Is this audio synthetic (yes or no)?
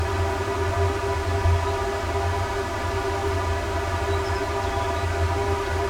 no